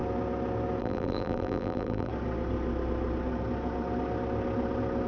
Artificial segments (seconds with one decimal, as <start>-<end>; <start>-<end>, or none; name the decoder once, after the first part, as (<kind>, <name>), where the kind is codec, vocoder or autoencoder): 0.8-2.1 (vocoder, BigVGAN v2)